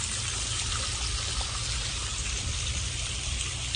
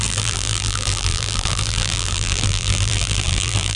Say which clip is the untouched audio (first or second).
first